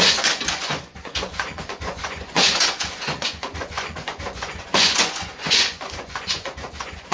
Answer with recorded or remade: remade